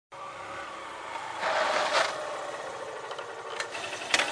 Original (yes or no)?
yes